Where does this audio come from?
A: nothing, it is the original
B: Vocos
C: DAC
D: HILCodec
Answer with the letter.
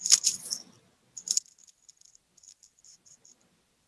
A